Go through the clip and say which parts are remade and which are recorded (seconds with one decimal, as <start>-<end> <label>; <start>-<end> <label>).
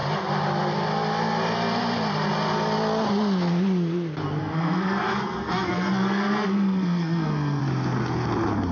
0.0-4.4 recorded; 4.4-7.6 remade; 7.6-8.7 recorded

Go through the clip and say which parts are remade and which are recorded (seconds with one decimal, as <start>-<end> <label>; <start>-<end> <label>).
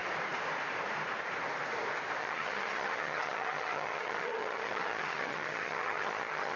0.0-2.2 recorded; 2.2-6.6 remade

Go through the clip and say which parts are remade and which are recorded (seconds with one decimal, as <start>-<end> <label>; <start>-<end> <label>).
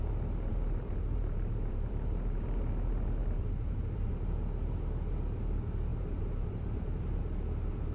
0.0-0.5 recorded; 0.5-4.1 remade; 4.1-5.9 recorded; 5.9-7.2 remade; 7.2-7.9 recorded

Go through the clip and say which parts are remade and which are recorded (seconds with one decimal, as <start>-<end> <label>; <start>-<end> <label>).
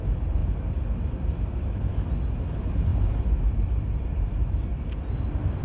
0.0-0.4 remade; 0.4-2.3 recorded; 2.3-4.7 remade; 4.7-5.6 recorded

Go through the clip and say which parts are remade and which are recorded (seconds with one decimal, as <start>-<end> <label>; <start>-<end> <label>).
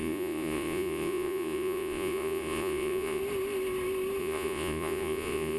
0.0-3.2 remade; 3.2-4.2 recorded; 4.2-5.6 remade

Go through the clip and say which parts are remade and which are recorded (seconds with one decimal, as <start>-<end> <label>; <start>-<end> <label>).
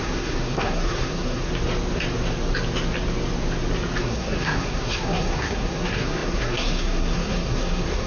0.0-1.5 remade; 1.5-4.0 recorded; 4.0-8.1 remade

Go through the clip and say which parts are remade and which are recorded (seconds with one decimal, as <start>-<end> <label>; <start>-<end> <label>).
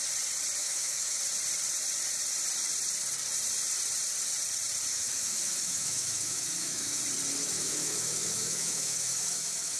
0.0-0.6 recorded; 0.6-1.2 remade; 1.2-4.9 recorded; 4.9-7.0 remade; 7.0-7.4 recorded; 7.4-9.8 remade